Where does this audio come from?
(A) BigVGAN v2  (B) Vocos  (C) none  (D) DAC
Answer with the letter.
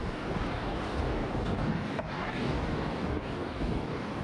D